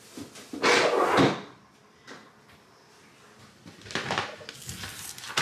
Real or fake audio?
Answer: real